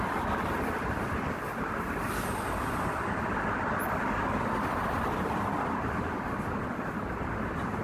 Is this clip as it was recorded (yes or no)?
yes